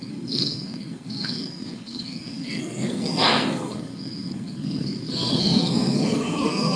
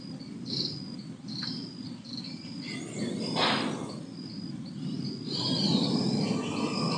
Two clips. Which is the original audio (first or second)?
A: second